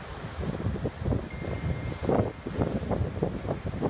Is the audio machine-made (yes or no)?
no